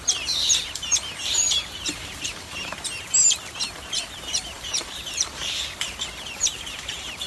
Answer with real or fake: fake